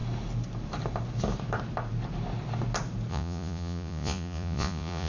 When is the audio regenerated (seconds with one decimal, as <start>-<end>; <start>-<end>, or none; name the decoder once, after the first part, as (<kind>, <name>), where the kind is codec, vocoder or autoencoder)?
3.1-5.1 (vocoder, Vocos)